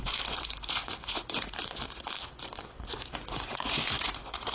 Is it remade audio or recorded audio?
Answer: remade